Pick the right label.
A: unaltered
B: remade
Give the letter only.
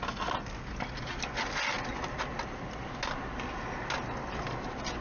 A